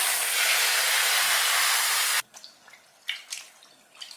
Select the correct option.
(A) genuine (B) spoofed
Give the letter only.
A